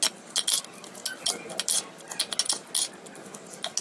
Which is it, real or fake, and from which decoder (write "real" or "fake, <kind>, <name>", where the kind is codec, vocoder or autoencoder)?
real